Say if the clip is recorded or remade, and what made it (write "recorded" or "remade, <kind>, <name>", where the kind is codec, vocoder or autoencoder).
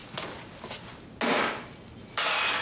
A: recorded